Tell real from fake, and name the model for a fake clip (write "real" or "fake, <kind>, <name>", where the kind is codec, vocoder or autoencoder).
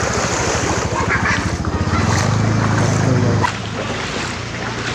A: real